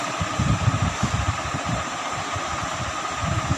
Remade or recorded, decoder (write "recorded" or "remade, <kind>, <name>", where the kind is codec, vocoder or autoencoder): remade, vocoder, BigVGAN v2